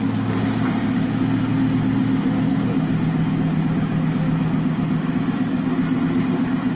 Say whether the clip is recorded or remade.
recorded